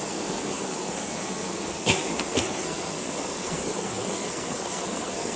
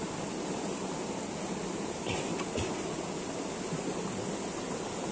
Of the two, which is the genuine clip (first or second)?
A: second